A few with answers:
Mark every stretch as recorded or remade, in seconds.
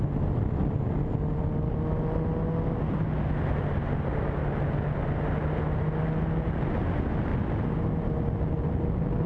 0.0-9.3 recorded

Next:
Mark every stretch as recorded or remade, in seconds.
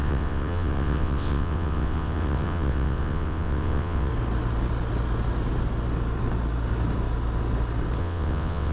0.0-4.1 remade; 4.1-8.0 recorded; 8.0-8.7 remade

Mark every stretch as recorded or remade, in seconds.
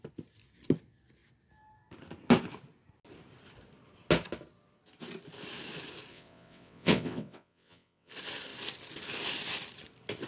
0.0-6.1 recorded; 6.1-8.1 remade; 8.1-10.3 recorded